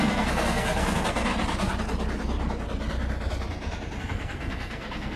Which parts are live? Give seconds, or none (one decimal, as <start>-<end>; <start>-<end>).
1.3-4.0